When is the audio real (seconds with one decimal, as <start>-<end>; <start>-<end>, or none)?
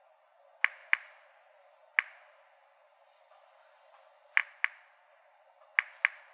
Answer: 0.0-6.3